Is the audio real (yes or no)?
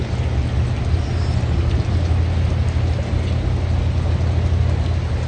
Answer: yes